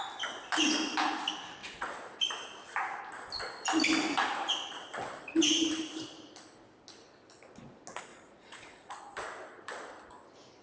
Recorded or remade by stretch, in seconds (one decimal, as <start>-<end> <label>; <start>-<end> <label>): 0.0-1.6 recorded; 1.6-2.2 remade; 2.2-8.1 recorded; 8.1-9.0 remade; 9.0-10.6 recorded